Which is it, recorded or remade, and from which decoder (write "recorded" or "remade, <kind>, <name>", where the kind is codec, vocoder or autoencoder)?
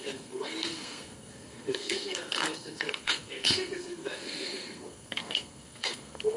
remade, codec, SNAC